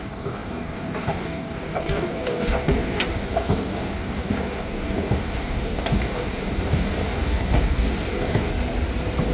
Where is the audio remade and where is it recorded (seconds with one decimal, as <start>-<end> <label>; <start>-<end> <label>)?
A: 0.0-8.5 remade; 8.5-9.3 recorded